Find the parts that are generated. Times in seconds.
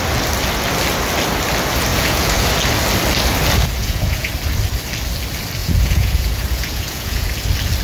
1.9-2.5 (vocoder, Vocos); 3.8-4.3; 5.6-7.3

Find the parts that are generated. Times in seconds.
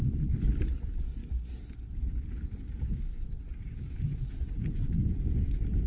none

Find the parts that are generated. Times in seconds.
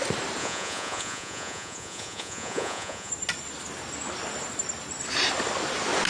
0.4-3.1 (vocoder, Vocos)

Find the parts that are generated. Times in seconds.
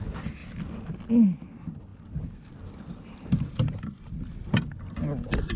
none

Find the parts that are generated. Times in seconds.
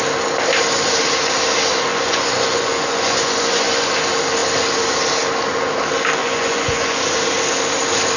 1.9-3.9 (vocoder, Vocos); 6.2-7.0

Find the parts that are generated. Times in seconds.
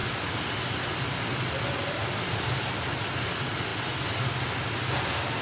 none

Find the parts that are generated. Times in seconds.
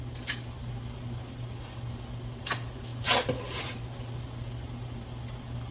none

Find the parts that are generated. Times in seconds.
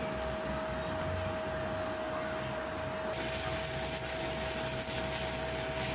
none